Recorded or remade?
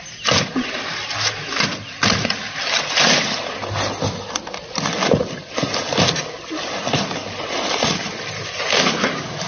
recorded